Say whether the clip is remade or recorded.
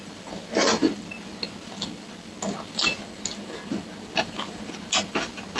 recorded